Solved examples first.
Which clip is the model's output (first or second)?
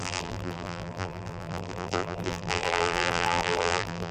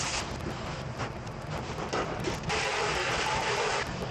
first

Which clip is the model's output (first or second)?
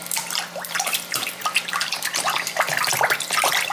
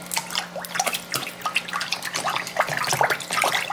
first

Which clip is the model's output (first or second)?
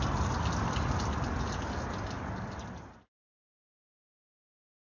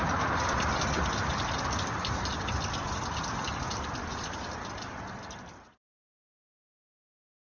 second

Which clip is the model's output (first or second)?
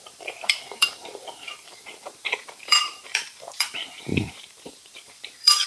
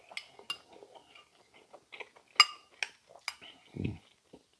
first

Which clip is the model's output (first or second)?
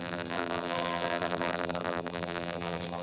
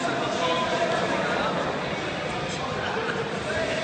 first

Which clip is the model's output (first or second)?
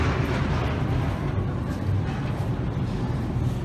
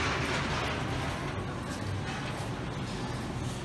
first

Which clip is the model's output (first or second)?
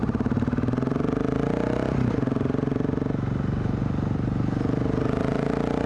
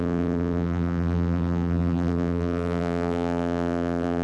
second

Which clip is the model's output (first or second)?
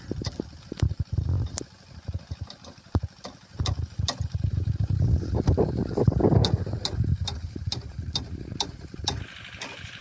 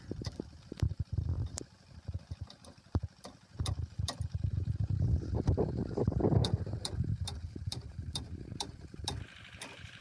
second